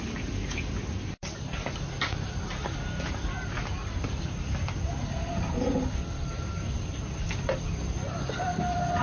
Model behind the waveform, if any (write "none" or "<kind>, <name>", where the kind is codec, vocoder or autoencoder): none